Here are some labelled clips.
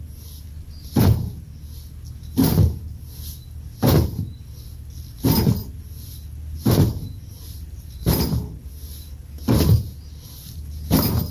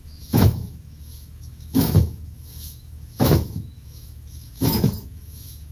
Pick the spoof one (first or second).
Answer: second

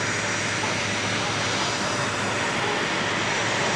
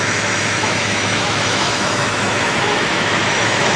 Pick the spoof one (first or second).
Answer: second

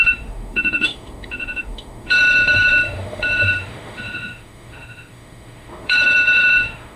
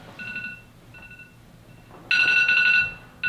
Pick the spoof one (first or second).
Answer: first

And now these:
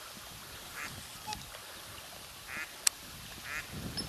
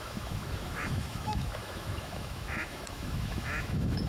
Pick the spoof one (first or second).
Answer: second